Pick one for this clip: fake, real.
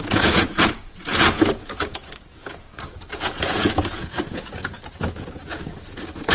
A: fake